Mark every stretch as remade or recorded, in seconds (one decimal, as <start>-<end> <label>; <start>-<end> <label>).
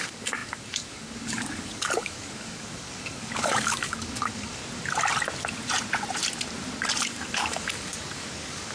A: 0.0-4.6 remade; 4.6-7.0 recorded; 7.0-8.7 remade